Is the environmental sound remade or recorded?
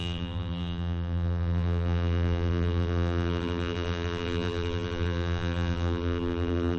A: remade